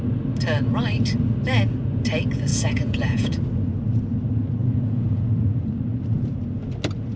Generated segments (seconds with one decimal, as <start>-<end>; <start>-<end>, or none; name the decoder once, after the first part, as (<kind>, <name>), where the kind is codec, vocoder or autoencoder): 2.5-3.4 (vocoder, Vocos); 4.6-5.7